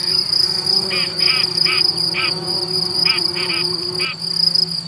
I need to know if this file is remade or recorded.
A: recorded